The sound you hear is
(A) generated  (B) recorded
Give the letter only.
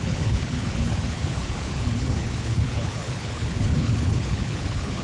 A